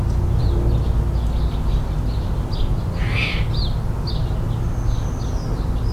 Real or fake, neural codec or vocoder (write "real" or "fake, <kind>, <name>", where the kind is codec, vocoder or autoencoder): real